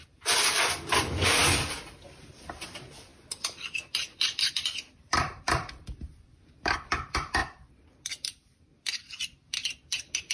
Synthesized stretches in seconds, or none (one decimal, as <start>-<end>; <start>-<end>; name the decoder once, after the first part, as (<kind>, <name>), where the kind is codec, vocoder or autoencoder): 0.0-1.4 (vocoder, BigVGAN v2); 2.3-10.3